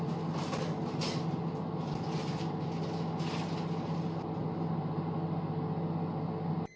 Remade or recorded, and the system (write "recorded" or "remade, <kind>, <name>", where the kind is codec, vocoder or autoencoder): recorded